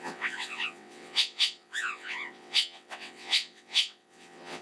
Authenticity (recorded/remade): remade